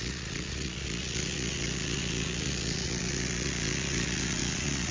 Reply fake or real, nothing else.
fake